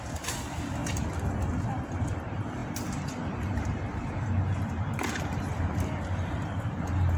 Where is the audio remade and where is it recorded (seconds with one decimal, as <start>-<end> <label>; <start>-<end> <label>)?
0.0-0.8 remade; 0.8-1.7 recorded; 1.7-7.2 remade